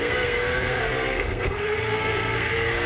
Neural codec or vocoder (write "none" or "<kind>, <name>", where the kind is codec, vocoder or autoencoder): codec, SNAC